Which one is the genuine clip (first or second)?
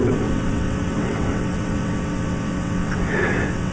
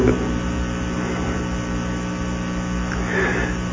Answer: second